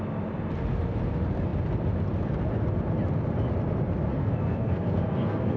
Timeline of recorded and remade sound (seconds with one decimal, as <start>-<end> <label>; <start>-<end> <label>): 0.0-4.1 recorded; 4.1-5.6 remade